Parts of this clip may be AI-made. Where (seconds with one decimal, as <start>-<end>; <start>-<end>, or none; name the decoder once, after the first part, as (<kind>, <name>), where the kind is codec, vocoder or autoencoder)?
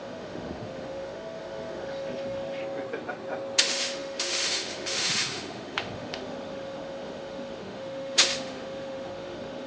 0.0-2.6 (autoencoder, DAC-VAE); 3.6-9.7